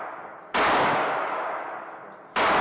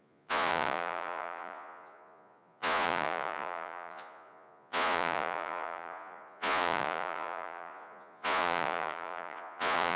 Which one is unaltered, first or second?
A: first